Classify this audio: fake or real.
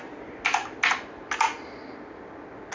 real